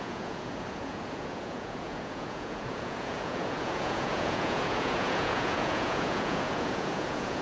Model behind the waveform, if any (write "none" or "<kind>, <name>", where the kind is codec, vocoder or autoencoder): vocoder, Vocos